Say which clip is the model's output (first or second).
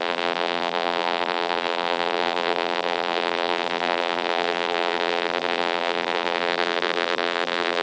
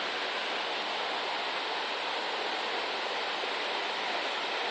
first